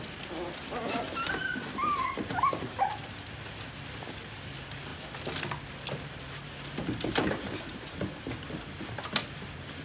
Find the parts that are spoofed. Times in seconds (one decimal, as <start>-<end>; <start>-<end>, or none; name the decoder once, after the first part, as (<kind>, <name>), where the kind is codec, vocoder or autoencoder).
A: none